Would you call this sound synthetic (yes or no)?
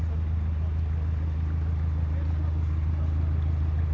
no